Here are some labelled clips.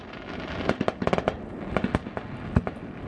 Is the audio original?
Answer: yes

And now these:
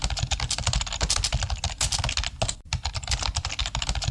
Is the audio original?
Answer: yes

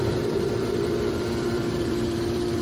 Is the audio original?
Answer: no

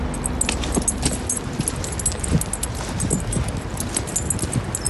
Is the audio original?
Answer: yes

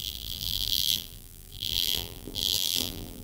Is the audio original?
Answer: no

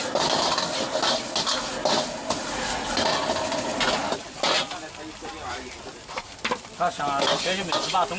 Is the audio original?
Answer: yes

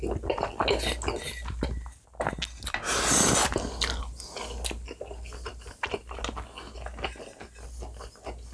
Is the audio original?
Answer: yes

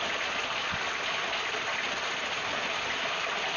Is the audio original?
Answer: yes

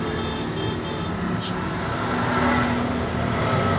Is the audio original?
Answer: yes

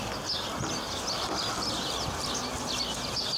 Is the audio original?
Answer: yes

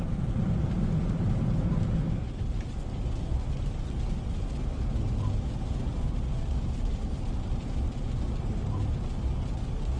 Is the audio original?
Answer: yes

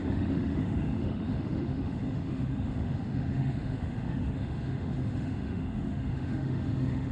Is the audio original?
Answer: no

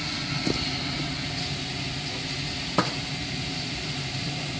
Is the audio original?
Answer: yes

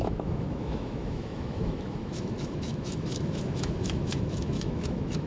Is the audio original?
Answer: no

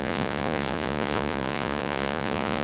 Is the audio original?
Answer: no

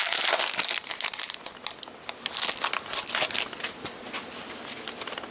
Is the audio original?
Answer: yes